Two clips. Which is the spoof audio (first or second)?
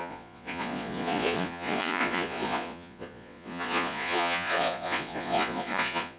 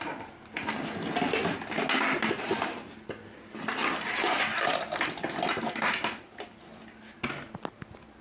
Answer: first